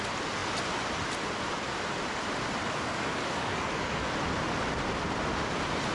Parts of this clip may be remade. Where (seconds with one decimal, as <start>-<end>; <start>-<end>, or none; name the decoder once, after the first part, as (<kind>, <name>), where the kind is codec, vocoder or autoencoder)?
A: 2.6-4.0 (codec, DAC)